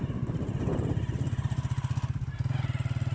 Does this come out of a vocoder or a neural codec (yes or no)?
no